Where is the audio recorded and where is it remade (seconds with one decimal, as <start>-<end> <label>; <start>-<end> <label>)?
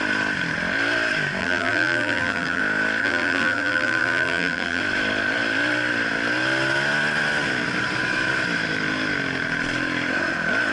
0.0-1.4 recorded; 1.4-2.6 remade; 2.6-3.0 recorded; 3.0-4.8 remade; 4.8-10.7 recorded